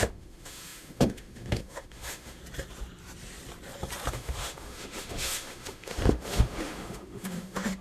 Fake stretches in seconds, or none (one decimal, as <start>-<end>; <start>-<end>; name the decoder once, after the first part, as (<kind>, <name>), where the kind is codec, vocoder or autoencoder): 0.0-2.4 (autoencoder, DAC-VAE); 4.1-7.8